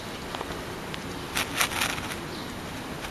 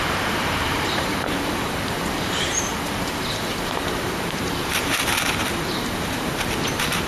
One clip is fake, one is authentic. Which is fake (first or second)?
second